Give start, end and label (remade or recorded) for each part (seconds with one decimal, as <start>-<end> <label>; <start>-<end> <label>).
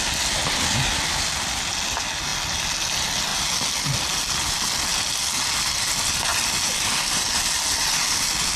0.0-8.6 recorded